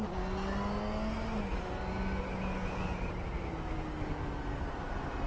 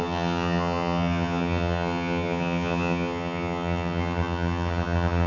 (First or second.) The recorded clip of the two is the first